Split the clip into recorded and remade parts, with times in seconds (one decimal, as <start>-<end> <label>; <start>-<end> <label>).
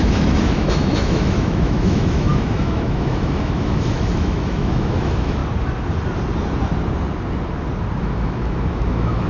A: 0.0-5.4 remade; 5.4-8.0 recorded; 8.0-9.3 remade